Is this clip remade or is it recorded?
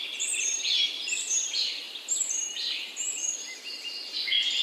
recorded